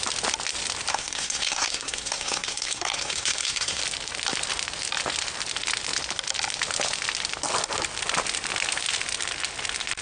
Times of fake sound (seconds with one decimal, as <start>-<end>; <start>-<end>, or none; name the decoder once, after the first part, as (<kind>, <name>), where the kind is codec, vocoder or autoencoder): 0.9-3.8 (codec, SNAC)